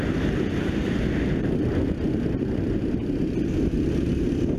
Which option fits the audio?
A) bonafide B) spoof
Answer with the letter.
A